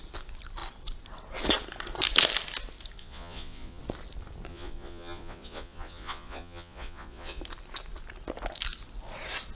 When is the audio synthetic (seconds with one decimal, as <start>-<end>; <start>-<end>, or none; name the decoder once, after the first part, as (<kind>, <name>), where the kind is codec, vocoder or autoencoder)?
3.0-3.8 (vocoder, Vocos); 4.5-7.4